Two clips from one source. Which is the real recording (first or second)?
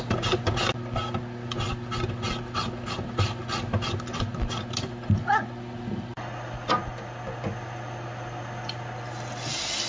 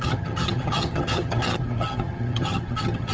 first